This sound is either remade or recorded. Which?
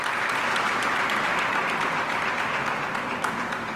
recorded